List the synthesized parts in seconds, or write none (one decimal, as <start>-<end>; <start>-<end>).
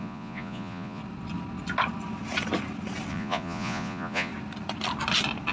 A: 0.0-1.0; 3.1-4.3